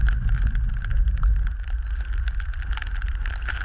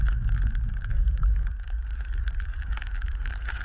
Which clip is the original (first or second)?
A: first